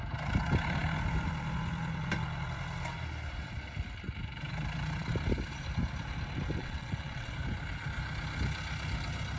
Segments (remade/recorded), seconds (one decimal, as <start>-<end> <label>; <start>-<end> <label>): 0.0-6.6 recorded; 6.6-7.3 remade; 7.3-9.4 recorded

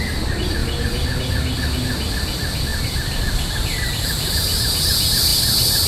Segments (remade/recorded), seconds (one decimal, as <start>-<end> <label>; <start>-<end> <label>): 0.0-0.6 recorded; 0.6-1.2 remade; 1.2-2.7 recorded; 2.7-4.8 remade; 4.8-5.3 recorded; 5.3-5.9 remade

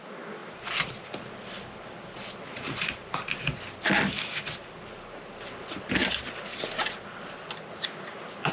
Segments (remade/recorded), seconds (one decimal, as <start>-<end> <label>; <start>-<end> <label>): 0.0-8.5 recorded

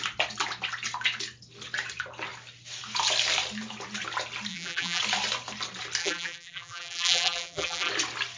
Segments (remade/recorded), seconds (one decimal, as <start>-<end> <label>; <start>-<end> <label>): 0.0-4.5 recorded; 4.5-5.0 remade; 5.0-6.0 recorded; 6.0-7.9 remade; 7.9-8.4 recorded

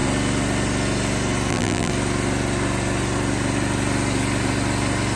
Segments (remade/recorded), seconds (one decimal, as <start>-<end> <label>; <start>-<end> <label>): 0.0-1.5 recorded; 1.5-1.9 remade; 1.9-5.2 recorded